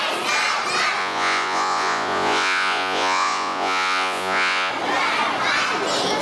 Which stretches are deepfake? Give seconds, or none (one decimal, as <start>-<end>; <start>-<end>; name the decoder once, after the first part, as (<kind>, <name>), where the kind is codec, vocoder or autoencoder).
1.0-4.7 (vocoder, Vocos)